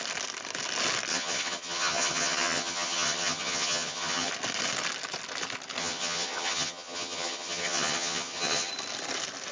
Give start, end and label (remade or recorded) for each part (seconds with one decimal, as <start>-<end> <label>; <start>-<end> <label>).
0.0-1.1 recorded; 1.1-4.3 remade; 4.3-5.8 recorded; 5.8-8.7 remade; 8.7-9.5 recorded